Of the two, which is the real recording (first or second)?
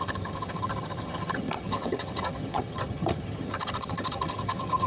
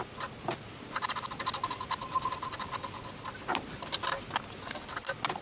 second